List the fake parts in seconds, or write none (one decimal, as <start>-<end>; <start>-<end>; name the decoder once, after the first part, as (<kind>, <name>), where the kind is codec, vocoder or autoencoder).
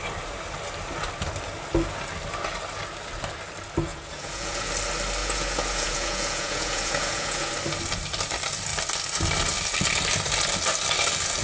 3.9-4.7 (vocoder, Vocos); 5.2-7.5